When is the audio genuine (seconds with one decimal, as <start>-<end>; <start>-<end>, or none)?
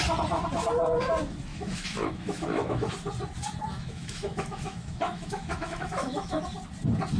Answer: 0.0-1.5; 2.9-3.7; 6.4-7.2